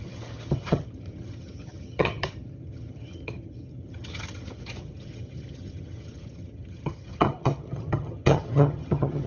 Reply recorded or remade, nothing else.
remade